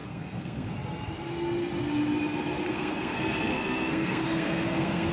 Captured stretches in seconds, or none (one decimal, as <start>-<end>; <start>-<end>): 0.7-2.7